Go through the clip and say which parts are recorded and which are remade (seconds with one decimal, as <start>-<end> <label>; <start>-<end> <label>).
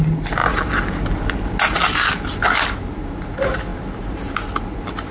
0.0-5.1 recorded